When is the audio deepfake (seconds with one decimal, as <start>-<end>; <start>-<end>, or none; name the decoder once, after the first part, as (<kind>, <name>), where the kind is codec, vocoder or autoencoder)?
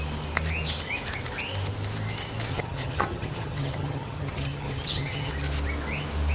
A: 2.5-5.3 (vocoder, HiFi-GAN)